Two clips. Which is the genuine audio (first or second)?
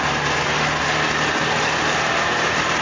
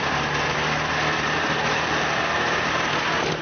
first